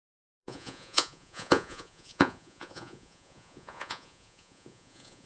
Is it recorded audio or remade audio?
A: remade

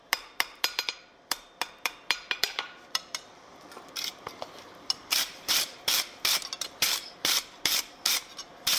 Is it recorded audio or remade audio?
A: remade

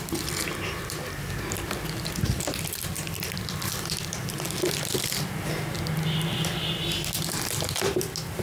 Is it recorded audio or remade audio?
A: recorded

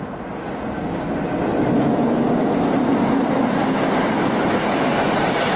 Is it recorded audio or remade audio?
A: recorded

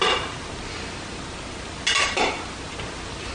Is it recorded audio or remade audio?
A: recorded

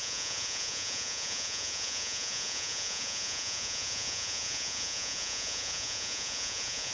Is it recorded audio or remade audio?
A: remade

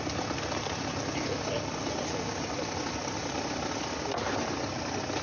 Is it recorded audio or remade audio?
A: recorded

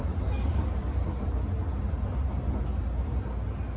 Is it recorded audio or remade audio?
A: recorded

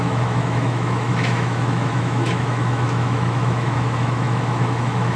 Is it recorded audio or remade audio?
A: remade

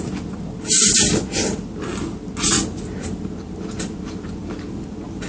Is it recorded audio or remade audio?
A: recorded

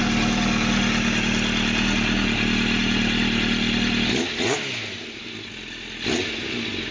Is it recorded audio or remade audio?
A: recorded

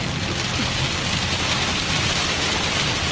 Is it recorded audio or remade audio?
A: recorded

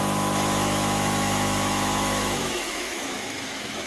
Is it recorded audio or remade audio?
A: remade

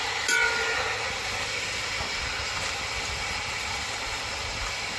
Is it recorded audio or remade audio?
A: recorded